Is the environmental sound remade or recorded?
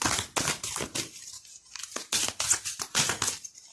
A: recorded